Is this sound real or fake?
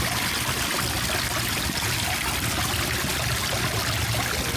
real